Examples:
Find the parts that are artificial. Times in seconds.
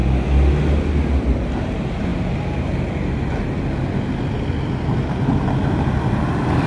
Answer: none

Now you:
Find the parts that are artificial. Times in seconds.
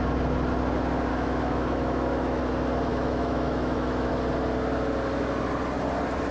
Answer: 1.1-2.4 (autoencoder, DAC-VAE); 2.9-4.1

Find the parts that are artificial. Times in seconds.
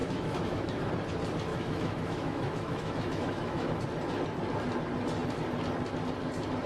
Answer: 0.0-0.9 (autoencoder, DAC-VAE); 1.5-3.8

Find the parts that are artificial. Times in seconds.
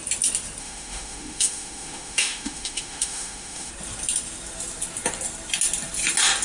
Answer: 0.6-3.7 (autoencoder, DAC-VAE)